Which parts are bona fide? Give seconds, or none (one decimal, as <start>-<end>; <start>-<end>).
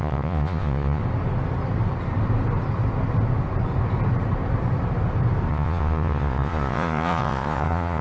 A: 1.0-5.5